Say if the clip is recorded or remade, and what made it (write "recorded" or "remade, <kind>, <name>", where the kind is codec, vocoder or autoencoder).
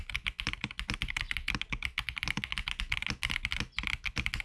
recorded